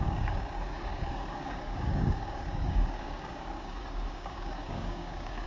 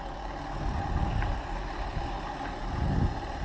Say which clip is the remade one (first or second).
first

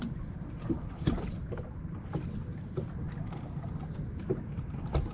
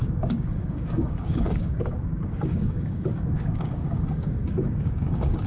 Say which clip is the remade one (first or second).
second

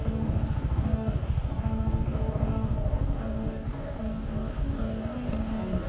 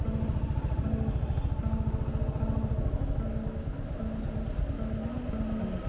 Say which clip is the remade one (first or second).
first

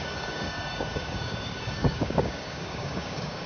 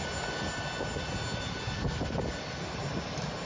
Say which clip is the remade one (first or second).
first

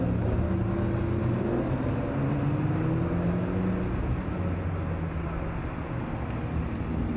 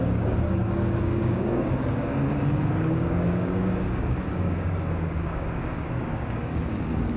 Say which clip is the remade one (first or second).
second